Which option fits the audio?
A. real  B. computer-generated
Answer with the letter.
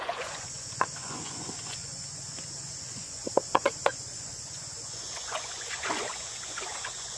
B